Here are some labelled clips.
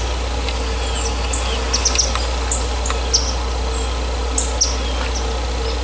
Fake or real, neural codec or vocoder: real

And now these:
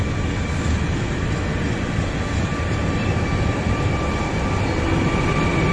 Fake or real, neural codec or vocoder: real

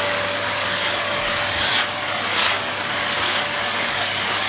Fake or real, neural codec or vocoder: fake, codec, DAC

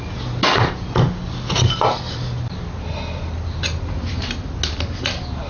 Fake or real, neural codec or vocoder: real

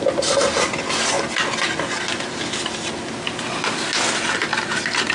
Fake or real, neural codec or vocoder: real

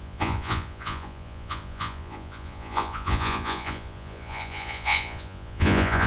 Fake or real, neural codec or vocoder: fake, vocoder, Vocos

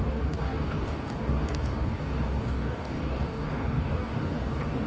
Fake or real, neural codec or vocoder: fake, codec, DAC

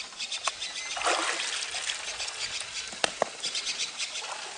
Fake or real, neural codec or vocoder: real